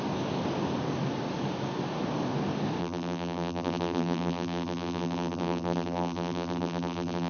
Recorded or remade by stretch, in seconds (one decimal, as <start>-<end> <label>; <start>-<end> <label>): 0.0-2.8 recorded; 2.8-7.3 remade